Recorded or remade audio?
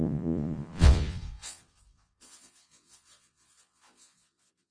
remade